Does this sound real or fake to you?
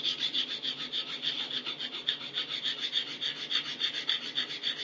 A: real